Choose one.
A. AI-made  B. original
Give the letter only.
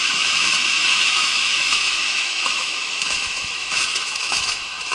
A